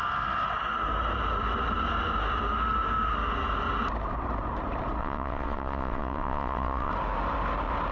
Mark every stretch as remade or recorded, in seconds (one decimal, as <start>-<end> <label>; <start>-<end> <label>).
0.0-5.0 recorded; 5.0-6.9 remade; 6.9-7.9 recorded